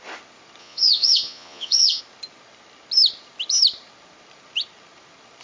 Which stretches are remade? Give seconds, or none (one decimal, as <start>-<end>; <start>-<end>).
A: 0.6-2.0